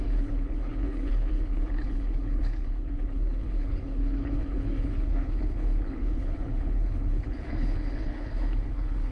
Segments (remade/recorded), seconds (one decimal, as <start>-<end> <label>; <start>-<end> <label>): 0.0-9.1 remade